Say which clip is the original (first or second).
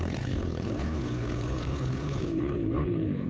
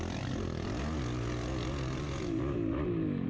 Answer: second